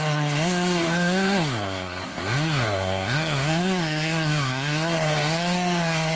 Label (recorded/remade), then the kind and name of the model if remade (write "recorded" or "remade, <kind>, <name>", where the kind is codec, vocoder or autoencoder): remade, codec, SNAC